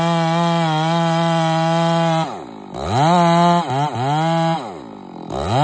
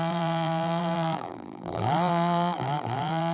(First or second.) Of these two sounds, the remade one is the second